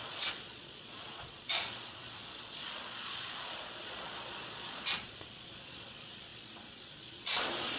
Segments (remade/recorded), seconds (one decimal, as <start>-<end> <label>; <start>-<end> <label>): 0.0-7.8 remade

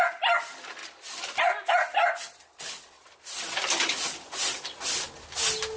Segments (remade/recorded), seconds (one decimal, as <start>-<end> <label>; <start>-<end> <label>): 0.0-5.8 recorded

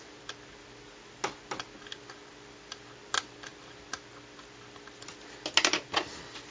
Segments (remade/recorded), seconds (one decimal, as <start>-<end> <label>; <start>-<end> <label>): 0.0-6.5 recorded